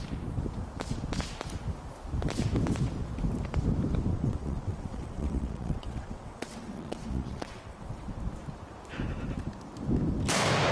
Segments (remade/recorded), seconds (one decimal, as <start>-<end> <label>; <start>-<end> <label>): 0.0-4.1 recorded; 4.1-8.1 remade; 8.1-10.7 recorded